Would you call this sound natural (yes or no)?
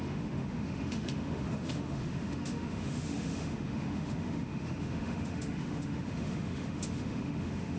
no